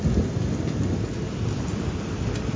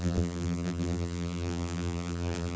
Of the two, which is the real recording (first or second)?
first